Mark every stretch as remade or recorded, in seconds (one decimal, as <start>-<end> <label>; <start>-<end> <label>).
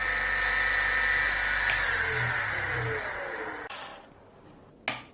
0.0-5.1 recorded